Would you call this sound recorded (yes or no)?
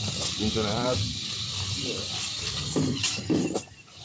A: no